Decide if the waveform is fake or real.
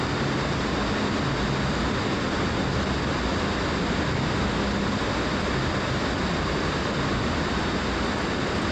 real